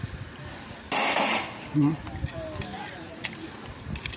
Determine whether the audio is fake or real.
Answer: real